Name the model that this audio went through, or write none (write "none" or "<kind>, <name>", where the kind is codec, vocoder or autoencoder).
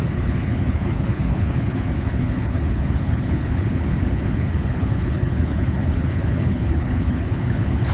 codec, HILCodec